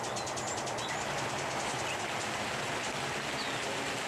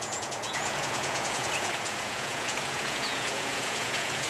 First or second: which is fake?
second